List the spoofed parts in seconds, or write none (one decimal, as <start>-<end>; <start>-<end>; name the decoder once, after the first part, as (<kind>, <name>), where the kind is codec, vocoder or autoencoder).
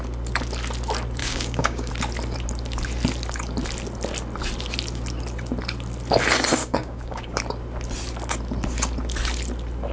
1.2-1.9 (codec, DAC); 6.6-7.4